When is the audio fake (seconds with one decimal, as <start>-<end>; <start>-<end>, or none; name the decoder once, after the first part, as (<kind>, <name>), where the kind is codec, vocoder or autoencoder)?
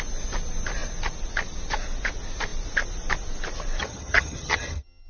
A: 3.8-5.1 (vocoder, HiFi-GAN)